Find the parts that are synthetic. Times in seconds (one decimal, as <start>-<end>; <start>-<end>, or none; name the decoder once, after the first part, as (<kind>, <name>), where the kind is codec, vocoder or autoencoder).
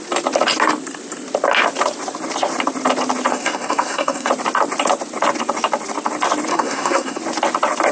3.3-4.3 (codec, SNAC); 6.5-7.2